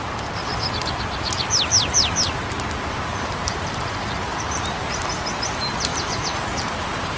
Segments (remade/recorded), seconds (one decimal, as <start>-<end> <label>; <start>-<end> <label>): 0.0-0.5 remade; 0.5-2.9 recorded; 2.9-7.2 remade